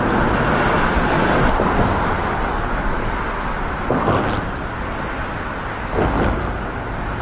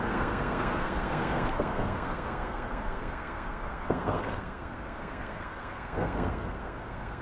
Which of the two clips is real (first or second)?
first